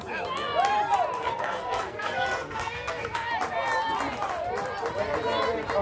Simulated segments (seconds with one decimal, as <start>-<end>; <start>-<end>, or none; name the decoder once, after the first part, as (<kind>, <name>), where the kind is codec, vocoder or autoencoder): 1.2-3.3 (codec, SNAC)